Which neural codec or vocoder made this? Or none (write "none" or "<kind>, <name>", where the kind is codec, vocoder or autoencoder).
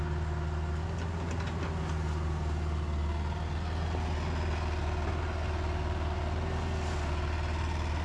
none